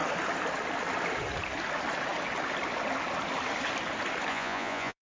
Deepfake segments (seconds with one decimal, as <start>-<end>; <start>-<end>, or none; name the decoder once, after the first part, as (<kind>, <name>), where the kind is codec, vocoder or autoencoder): 4.3-5.1 (vocoder, Vocos)